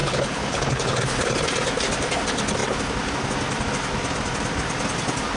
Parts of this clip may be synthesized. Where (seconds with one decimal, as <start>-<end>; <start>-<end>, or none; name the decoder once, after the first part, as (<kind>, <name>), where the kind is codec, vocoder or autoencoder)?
0.0-1.0 (codec, HILCodec)